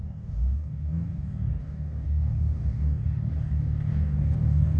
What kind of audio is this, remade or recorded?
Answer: remade